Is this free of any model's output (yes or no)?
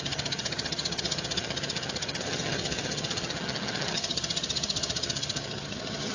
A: no